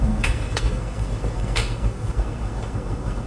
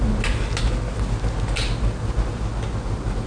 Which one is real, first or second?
second